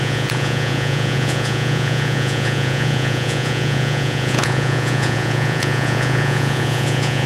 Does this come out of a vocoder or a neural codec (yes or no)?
yes